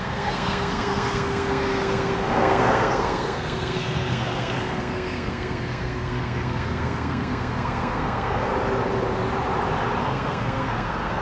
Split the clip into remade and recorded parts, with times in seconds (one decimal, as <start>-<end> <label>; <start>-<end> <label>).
0.0-8.5 remade; 8.5-10.0 recorded; 10.0-11.2 remade